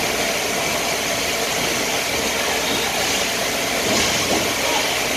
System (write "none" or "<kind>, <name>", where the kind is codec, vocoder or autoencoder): none